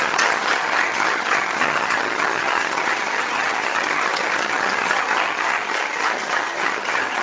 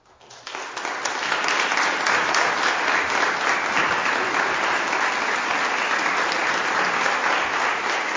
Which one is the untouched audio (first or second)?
second